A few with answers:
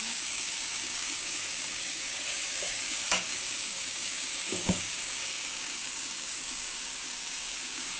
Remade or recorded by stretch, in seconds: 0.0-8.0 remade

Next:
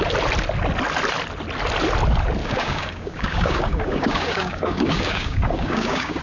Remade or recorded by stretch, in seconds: 0.0-2.4 recorded; 2.4-6.2 remade

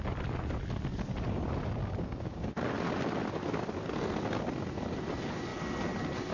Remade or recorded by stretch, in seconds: 0.0-1.8 recorded; 1.8-2.5 remade; 2.5-6.3 recorded

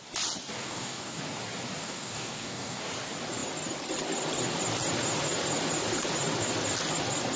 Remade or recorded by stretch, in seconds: 0.0-0.6 recorded; 0.6-1.2 remade; 1.2-1.8 recorded; 1.8-2.8 remade; 2.8-7.4 recorded

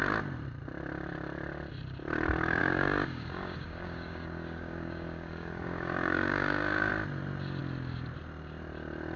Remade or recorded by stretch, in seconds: 0.0-2.6 recorded; 2.6-6.9 remade; 6.9-9.2 recorded

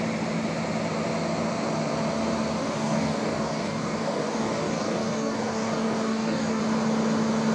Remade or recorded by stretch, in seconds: 0.0-2.6 recorded; 2.6-6.6 remade; 6.6-7.5 recorded

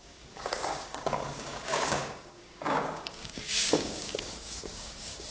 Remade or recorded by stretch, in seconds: 0.0-5.3 remade